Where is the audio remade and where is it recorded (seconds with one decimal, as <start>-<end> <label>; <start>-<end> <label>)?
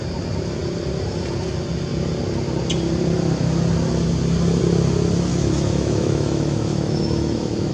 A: 0.0-5.3 recorded; 5.3-7.7 remade